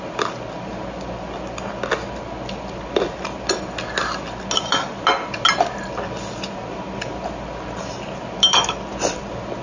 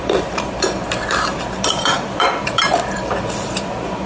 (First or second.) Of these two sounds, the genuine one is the first